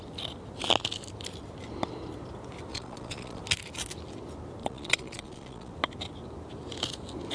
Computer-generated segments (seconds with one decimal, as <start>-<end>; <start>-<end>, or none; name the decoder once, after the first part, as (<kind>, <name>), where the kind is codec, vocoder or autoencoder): 2.7-3.4 (vocoder, Vocos); 4.6-5.7